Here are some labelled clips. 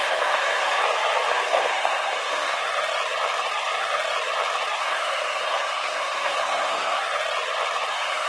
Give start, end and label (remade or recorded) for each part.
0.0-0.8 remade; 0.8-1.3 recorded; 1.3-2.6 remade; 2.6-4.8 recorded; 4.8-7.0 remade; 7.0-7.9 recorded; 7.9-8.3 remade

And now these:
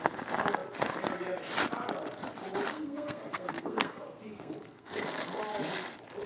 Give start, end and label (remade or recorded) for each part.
0.0-2.7 recorded; 2.7-5.4 remade; 5.4-6.3 recorded

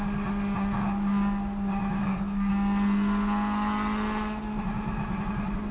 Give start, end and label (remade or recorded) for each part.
0.0-2.0 recorded; 2.0-2.5 remade; 2.5-5.7 recorded

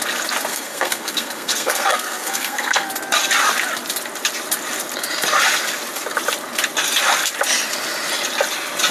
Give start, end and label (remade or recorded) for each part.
0.0-0.5 recorded; 0.5-2.9 remade; 2.9-8.9 recorded

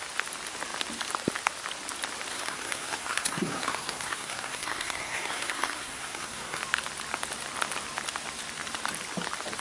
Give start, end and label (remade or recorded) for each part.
0.0-2.3 recorded; 2.3-6.6 remade; 6.6-9.6 recorded

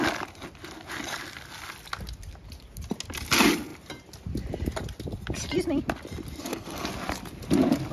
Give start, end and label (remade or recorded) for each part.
0.0-6.4 recorded; 6.4-6.9 remade; 6.9-7.9 recorded

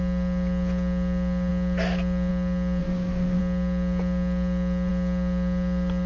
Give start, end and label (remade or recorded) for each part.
0.0-2.8 recorded; 2.8-3.4 remade; 3.4-6.1 recorded

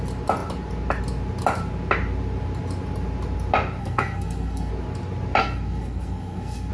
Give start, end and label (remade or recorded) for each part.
0.0-3.8 recorded; 3.8-4.7 remade; 4.7-5.4 recorded; 5.4-6.7 remade